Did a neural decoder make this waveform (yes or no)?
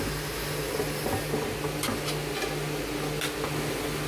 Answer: no